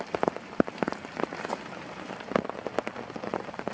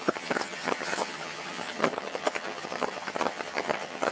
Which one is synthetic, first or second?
second